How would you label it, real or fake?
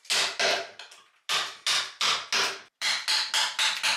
real